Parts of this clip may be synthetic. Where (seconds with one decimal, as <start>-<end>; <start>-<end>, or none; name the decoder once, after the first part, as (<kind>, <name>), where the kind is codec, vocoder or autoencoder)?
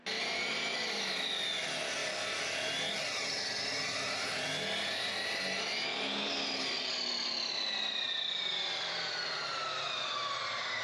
none